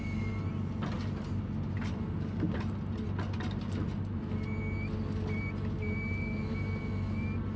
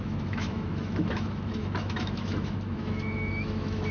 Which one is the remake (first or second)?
second